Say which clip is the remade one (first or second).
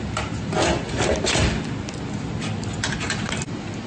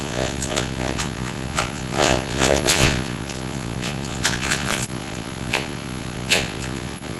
second